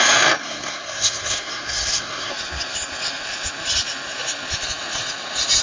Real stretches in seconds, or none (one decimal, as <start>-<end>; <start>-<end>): 0.0-0.4; 2.3-5.6